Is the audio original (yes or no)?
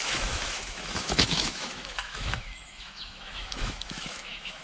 no